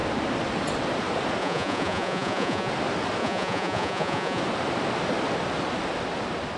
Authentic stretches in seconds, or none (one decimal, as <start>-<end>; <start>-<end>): 0.0-1.4; 2.7-3.2; 4.4-6.6